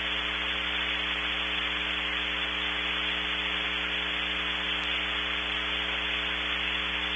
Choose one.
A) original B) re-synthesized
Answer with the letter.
A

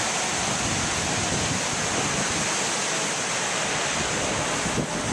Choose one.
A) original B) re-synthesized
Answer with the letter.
A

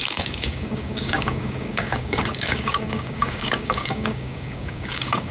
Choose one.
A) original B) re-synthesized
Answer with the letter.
B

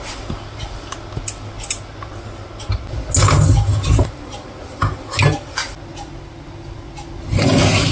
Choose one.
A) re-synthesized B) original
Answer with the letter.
B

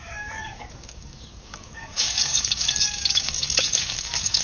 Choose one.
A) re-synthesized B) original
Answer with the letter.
A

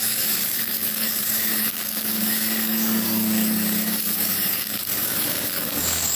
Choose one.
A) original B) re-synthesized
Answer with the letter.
B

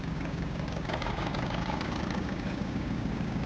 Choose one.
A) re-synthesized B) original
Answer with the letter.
A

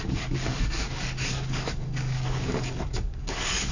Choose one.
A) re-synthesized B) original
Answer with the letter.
A